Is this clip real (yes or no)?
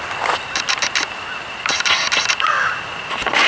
yes